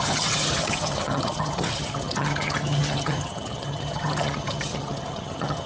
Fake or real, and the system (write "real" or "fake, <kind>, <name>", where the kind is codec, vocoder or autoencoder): fake, vocoder, HiFi-GAN